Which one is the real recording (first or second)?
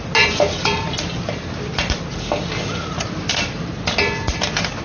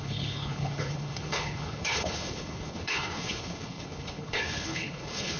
first